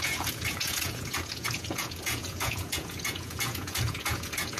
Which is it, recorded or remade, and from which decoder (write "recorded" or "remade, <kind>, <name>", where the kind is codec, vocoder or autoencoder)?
remade, vocoder, Vocos